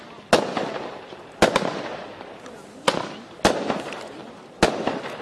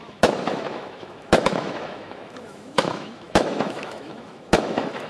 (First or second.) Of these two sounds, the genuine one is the first